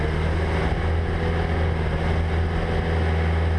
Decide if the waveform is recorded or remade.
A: recorded